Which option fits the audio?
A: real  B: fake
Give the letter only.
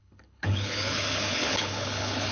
B